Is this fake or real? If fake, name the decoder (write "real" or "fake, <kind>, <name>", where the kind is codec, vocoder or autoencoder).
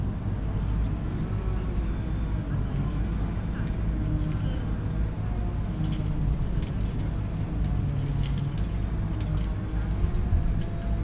real